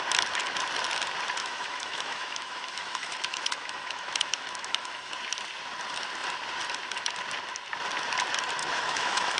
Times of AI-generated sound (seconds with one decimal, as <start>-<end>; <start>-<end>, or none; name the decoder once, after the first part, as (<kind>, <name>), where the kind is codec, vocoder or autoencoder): 1.4-5.1 (autoencoder, DAC-VAE); 8.6-9.4